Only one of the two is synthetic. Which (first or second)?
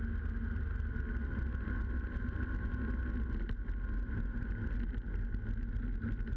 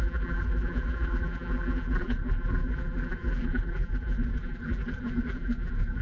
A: second